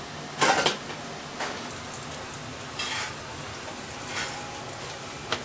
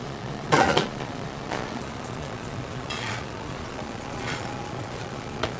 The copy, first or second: second